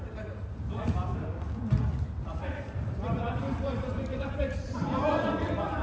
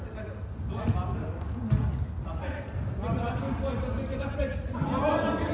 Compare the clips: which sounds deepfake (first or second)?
first